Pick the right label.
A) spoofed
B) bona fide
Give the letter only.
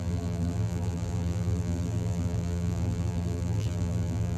A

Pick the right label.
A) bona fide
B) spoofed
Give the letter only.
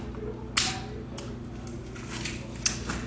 A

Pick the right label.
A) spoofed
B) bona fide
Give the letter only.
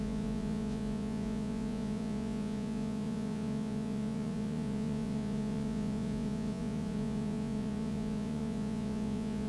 A